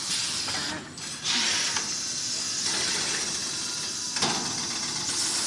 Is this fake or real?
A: real